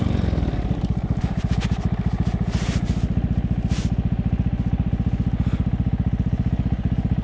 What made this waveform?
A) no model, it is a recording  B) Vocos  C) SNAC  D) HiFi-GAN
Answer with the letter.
A